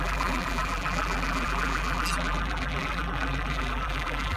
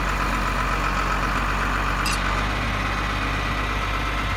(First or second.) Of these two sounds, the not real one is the first